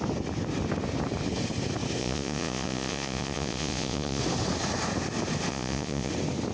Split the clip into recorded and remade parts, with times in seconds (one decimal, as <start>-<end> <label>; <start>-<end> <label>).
0.0-2.0 recorded; 2.0-4.2 remade; 4.2-5.5 recorded; 5.5-6.1 remade; 6.1-6.5 recorded